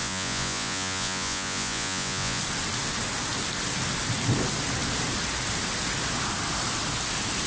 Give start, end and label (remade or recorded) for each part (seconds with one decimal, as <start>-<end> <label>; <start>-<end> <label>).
0.0-2.4 remade; 2.4-7.5 recorded